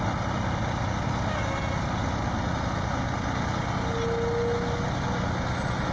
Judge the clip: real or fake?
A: real